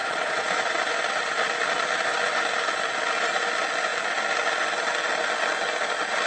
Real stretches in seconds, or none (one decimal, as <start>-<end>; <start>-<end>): 0.6-6.3